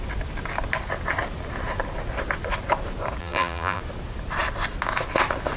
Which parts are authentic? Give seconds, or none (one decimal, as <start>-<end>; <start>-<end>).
0.0-3.2; 3.8-5.6